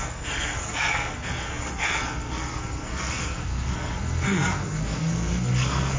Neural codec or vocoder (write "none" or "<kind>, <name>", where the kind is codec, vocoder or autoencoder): codec, SNAC